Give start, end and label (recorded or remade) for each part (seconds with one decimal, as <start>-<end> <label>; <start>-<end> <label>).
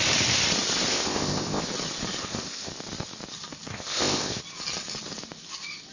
0.0-0.9 recorded; 0.9-1.6 remade; 1.6-2.2 recorded; 2.2-2.7 remade; 2.7-3.7 recorded; 3.7-4.4 remade; 4.4-5.9 recorded